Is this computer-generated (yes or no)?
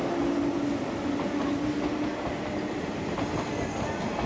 no